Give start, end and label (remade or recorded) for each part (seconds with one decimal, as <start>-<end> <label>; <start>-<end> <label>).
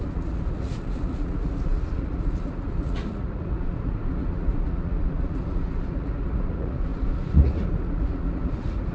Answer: 0.0-8.9 remade